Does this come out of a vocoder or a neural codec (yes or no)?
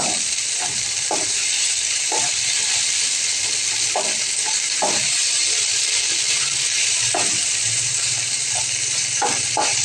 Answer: yes